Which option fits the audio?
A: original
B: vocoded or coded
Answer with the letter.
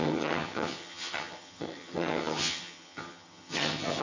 B